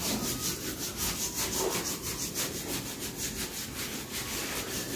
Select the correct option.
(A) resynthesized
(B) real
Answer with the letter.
B